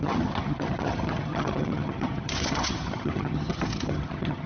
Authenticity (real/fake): fake